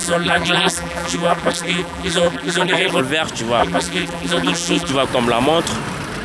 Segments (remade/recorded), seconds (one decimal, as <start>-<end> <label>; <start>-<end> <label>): 0.0-3.0 remade; 3.0-3.6 recorded; 3.6-4.9 remade; 4.9-6.2 recorded